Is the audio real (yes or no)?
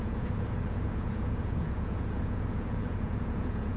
no